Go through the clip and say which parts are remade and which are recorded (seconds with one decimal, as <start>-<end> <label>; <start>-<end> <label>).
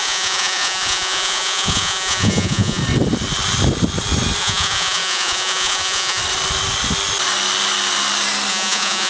0.0-2.8 remade; 2.8-4.4 recorded; 4.4-6.2 remade; 6.2-8.5 recorded; 8.5-9.1 remade